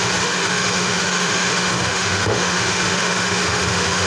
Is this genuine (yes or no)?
no